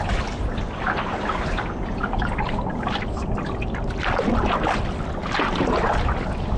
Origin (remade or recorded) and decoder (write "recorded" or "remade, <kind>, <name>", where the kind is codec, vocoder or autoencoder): recorded